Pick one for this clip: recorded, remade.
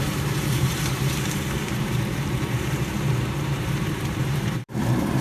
remade